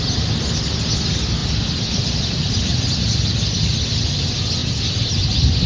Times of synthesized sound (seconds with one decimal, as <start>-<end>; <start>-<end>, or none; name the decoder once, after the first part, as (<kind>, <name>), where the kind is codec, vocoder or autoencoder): 1.4-4.1 (vocoder, BigVGAN v2); 4.6-5.3